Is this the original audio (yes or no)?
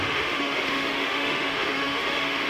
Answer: no